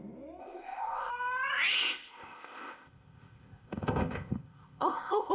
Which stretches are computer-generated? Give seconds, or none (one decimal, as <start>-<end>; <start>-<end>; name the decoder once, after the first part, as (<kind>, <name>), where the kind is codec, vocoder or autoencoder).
0.4-1.1 (codec, ZipCodec); 1.7-5.3